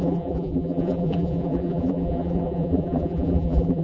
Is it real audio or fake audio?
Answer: fake